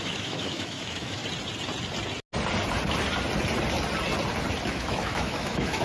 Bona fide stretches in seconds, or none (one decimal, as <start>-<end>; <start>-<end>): 1.2-4.7